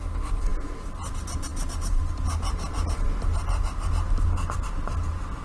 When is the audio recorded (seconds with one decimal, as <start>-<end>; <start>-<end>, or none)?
0.0-5.4